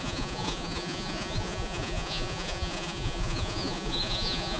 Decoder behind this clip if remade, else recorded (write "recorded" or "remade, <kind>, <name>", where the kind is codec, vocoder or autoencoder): remade, vocoder, Vocos